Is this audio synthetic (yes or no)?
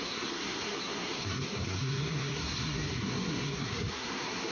yes